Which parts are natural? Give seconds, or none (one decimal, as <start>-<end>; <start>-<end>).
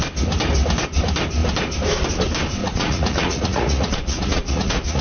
0.0-2.6